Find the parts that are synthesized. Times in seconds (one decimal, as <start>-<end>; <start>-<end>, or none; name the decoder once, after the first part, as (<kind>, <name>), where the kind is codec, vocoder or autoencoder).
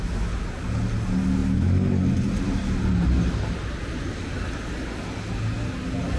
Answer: none